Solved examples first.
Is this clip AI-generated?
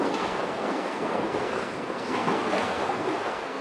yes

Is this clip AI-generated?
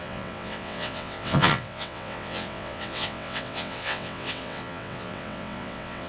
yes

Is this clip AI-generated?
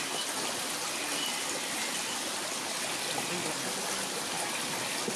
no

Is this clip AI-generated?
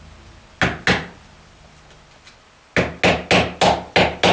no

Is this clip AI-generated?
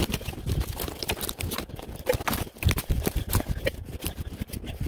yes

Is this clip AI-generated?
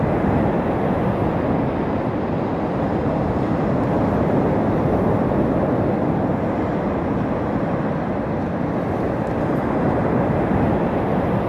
no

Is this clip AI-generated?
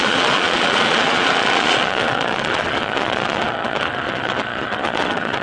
yes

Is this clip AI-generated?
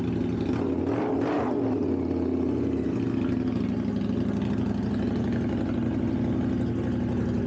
no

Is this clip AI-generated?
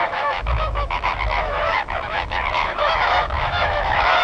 yes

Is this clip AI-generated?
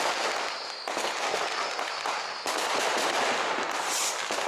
no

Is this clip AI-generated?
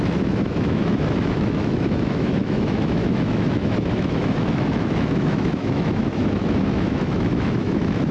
yes